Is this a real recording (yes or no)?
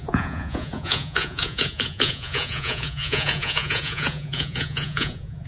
no